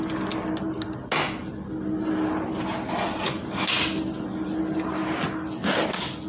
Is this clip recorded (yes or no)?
yes